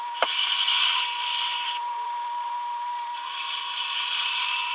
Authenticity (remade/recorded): remade